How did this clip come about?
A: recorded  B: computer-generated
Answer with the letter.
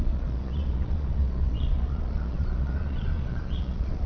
B